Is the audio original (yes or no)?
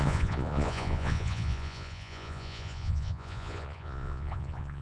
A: no